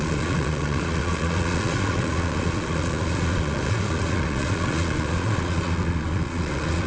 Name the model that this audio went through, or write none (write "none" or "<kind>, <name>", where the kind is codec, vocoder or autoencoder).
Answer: vocoder, Vocos